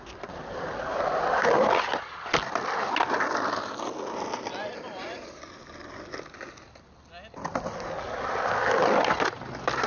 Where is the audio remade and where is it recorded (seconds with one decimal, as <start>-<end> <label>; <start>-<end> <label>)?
0.0-4.6 recorded; 4.6-5.4 remade; 5.4-9.9 recorded